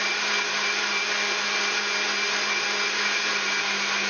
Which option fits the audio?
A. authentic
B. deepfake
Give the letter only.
A